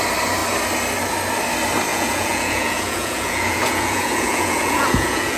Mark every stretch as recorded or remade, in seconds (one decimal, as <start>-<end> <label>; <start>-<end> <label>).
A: 0.0-1.9 recorded; 1.9-5.4 remade